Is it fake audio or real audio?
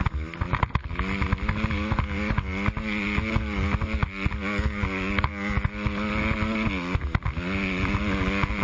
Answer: real